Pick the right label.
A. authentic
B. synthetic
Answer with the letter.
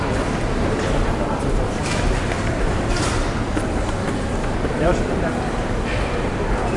B